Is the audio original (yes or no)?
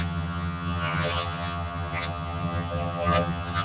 no